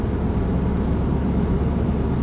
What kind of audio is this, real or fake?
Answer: real